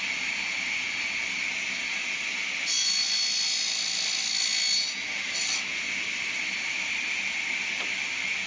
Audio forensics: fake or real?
real